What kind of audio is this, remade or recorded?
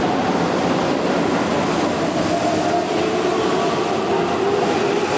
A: recorded